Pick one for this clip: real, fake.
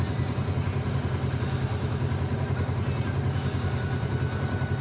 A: real